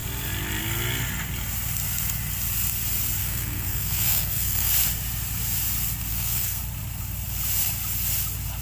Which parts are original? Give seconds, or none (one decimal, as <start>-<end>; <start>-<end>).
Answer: 0.0-3.2; 4.7-6.1; 6.6-8.6